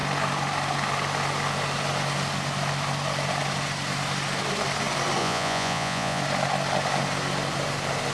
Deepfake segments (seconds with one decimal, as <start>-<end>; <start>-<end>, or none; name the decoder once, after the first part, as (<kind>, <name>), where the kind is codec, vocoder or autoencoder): 5.2-6.2 (vocoder, Vocos)